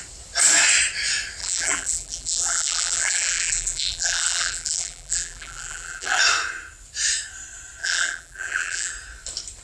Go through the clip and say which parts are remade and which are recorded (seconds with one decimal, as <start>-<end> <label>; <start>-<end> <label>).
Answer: 0.0-1.4 recorded; 1.4-6.2 remade; 6.2-7.8 recorded; 7.8-8.9 remade; 8.9-9.6 recorded